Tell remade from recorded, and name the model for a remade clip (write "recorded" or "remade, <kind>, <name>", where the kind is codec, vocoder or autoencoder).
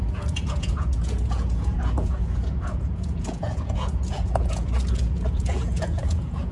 remade, vocoder, Vocos